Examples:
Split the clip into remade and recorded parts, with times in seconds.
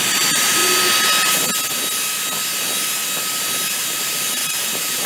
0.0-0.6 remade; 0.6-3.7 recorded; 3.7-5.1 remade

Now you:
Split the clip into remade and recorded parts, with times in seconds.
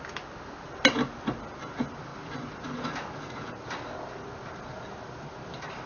0.0-5.9 recorded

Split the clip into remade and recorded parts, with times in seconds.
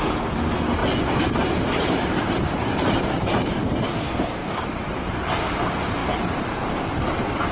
0.0-0.8 recorded; 0.8-3.5 remade; 3.5-7.5 recorded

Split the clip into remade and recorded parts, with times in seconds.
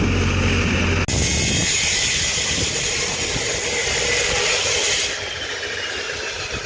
0.0-1.6 recorded; 1.6-3.3 remade; 3.3-3.8 recorded; 3.8-6.7 remade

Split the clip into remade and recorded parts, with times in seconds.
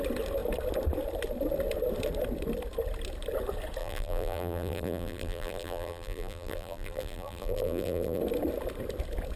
0.0-3.8 recorded; 3.8-8.2 remade; 8.2-9.4 recorded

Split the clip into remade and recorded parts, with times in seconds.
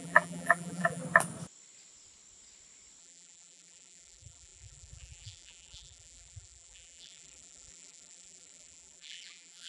0.0-1.0 remade; 1.0-3.0 recorded; 3.0-9.7 remade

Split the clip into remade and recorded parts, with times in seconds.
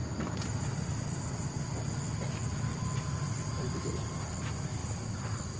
0.0-1.2 remade; 1.2-5.6 recorded